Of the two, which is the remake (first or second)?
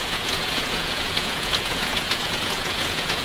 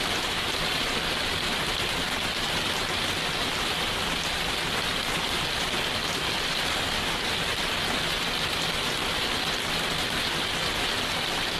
first